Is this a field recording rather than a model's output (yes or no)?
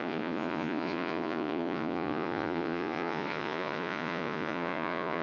no